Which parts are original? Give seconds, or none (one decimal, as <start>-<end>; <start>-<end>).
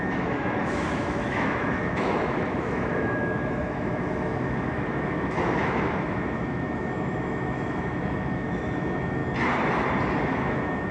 9.2-10.3